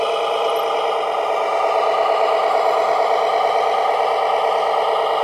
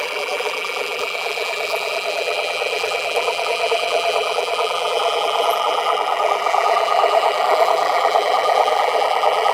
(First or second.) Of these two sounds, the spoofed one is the second